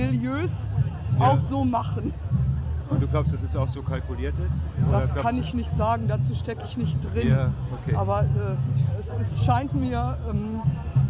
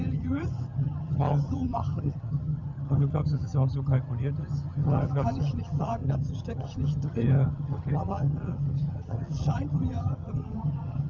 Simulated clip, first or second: second